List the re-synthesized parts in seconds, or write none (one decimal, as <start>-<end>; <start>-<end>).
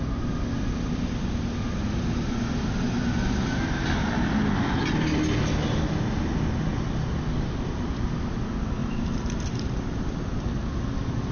8.8-10.3